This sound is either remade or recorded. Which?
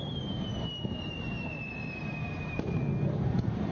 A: recorded